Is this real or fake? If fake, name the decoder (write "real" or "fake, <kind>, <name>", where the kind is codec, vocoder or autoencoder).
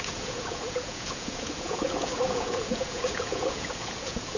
fake, vocoder, Vocos